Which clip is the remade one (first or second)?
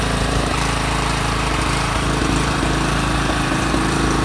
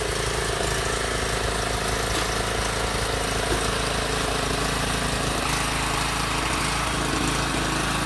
first